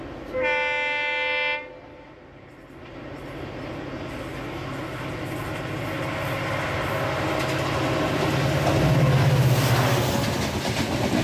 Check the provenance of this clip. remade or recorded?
recorded